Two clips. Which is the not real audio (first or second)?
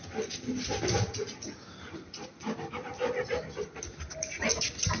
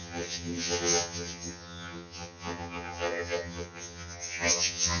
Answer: second